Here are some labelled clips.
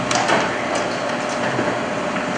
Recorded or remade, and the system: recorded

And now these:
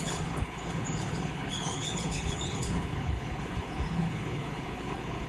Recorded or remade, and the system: remade, codec, HILCodec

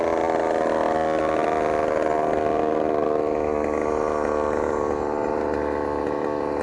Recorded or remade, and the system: recorded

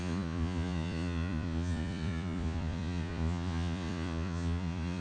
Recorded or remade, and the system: remade, vocoder, Vocos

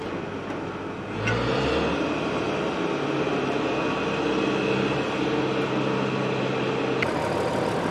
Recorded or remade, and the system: recorded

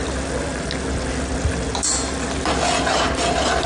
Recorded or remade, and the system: recorded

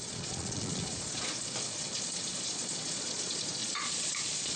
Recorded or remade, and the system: remade, vocoder, Vocos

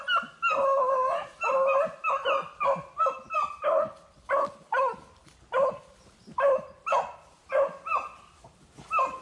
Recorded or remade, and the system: recorded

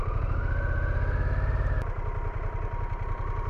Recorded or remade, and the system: recorded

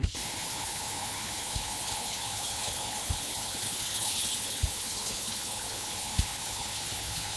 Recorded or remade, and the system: remade, codec, HILCodec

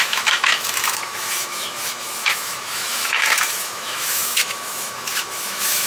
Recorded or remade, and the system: remade, autoencoder, DAC-VAE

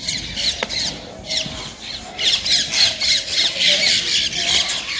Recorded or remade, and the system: recorded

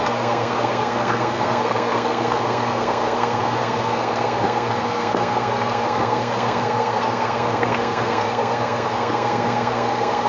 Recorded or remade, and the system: remade, codec, SNAC